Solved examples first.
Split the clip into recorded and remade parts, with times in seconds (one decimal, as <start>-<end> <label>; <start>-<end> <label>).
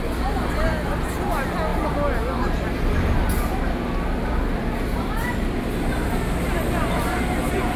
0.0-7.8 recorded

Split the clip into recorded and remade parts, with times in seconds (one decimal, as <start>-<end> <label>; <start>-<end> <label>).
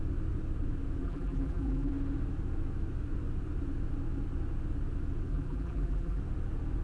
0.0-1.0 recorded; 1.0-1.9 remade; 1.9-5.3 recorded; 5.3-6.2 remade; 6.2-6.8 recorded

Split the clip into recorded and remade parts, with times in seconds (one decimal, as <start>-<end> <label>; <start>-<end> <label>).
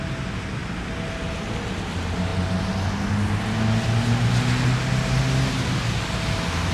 0.0-6.7 recorded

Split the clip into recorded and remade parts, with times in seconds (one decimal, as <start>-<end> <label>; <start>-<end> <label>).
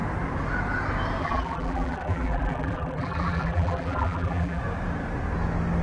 0.0-1.2 recorded; 1.2-4.6 remade; 4.6-5.8 recorded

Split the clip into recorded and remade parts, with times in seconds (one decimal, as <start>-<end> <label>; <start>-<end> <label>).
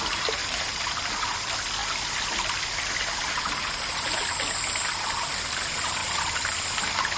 0.0-0.4 recorded; 0.4-0.9 remade; 0.9-1.8 recorded; 1.8-3.3 remade; 3.3-6.0 recorded; 6.0-6.8 remade; 6.8-7.2 recorded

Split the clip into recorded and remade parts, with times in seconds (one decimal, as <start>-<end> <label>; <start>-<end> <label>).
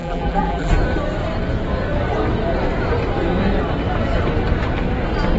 0.0-0.7 remade; 0.7-5.4 recorded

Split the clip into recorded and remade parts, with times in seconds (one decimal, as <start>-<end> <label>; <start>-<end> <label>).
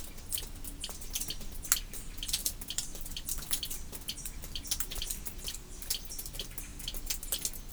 0.0-2.4 recorded; 2.4-6.1 remade; 6.1-7.7 recorded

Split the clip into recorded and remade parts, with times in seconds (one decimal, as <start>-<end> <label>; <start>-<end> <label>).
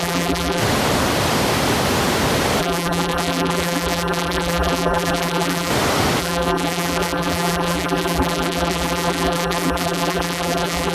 0.0-0.6 remade; 0.6-2.6 recorded; 2.6-5.7 remade; 5.7-6.2 recorded; 6.2-10.9 remade